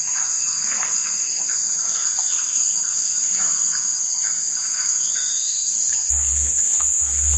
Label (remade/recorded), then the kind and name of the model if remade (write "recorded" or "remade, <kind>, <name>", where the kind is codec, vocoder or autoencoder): remade, codec, SNAC